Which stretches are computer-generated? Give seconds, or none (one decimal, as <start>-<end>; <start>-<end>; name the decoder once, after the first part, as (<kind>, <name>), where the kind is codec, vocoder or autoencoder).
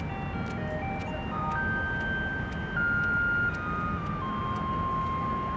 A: none